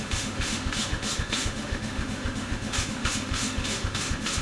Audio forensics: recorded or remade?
remade